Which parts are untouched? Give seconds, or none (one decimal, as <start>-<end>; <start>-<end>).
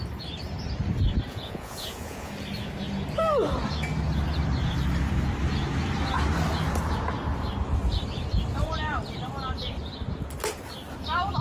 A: 0.0-1.3; 2.3-11.4